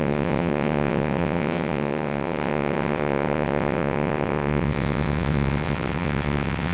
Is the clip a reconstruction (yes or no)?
yes